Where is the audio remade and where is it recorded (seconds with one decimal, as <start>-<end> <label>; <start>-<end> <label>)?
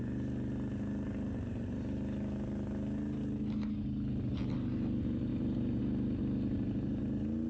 0.0-5.3 recorded; 5.3-5.8 remade; 5.8-6.2 recorded; 6.2-7.0 remade; 7.0-7.5 recorded